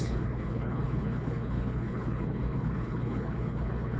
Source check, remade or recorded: remade